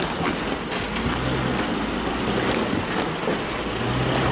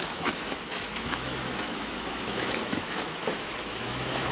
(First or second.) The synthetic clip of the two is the second